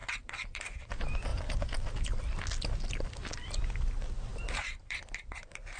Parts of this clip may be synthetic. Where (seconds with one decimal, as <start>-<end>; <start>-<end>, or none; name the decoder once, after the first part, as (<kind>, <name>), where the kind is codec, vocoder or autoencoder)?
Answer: 0.0-0.9 (vocoder, BigVGAN v2); 4.3-5.8